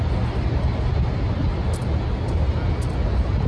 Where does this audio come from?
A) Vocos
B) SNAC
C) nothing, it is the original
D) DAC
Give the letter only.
C